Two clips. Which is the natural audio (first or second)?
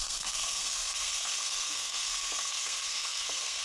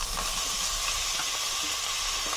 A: second